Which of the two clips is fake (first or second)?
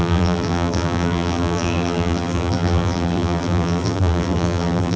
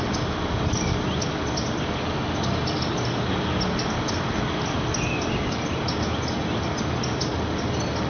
first